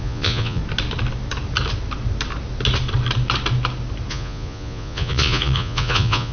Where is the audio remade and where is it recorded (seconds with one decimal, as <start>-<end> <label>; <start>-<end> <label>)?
0.0-0.6 remade; 0.6-4.1 recorded; 4.1-6.3 remade